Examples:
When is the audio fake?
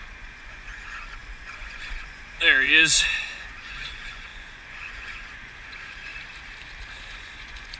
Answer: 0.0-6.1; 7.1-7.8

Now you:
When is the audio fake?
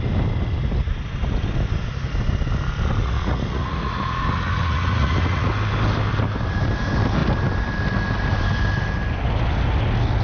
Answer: 3.0-5.5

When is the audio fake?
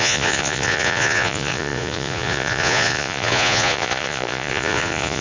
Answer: 0.0-5.2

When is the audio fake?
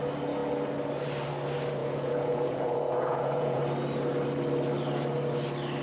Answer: 1.8-3.6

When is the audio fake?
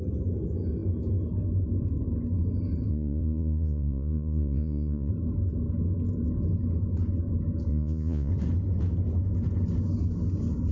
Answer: 2.9-5.1; 7.7-8.3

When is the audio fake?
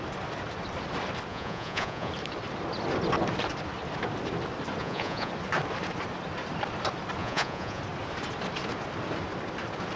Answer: 1.3-2.1; 4.8-5.3; 7.2-7.8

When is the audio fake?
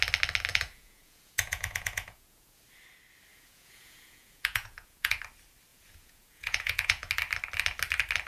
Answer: 0.5-2.6; 3.3-5.2; 5.7-7.1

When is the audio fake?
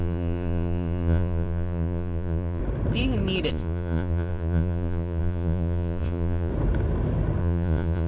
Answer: 0.0-2.6; 3.5-6.5; 7.4-8.1